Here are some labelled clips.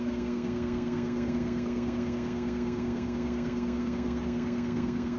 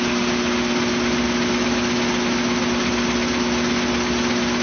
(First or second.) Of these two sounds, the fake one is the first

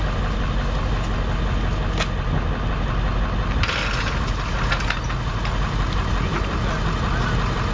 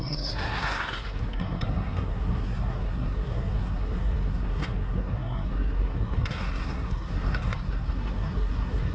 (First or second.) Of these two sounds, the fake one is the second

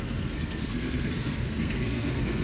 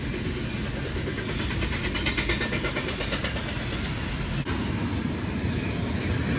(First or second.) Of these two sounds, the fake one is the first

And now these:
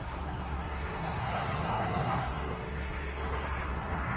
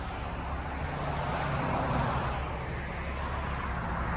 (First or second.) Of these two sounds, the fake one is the first